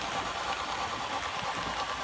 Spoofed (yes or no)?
no